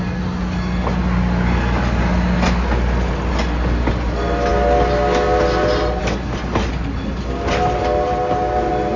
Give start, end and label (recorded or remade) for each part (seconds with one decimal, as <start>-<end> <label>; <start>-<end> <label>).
0.0-9.0 recorded